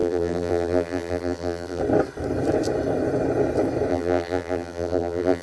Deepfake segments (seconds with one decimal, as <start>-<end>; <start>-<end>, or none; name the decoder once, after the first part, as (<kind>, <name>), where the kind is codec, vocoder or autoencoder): 0.0-1.8 (vocoder, BigVGAN v2); 3.9-5.4